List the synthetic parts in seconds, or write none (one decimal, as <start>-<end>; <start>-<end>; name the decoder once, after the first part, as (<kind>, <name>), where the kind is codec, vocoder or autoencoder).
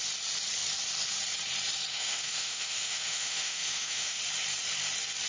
1.9-4.2 (autoencoder, DAC-VAE)